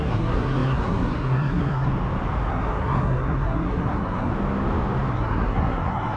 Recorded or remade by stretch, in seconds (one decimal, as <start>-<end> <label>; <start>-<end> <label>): 0.0-1.9 remade; 1.9-2.5 recorded; 2.5-4.3 remade; 4.3-5.1 recorded; 5.1-6.2 remade